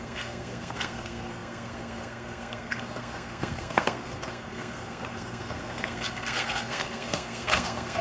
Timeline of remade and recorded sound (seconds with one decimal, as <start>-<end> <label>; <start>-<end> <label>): 0.0-8.0 remade